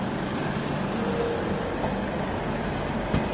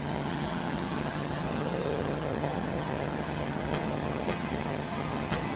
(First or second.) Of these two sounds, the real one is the first